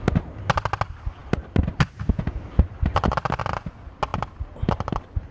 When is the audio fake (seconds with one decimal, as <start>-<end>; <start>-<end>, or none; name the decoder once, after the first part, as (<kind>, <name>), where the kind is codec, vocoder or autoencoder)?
none